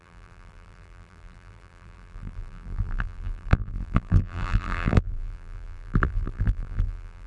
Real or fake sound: fake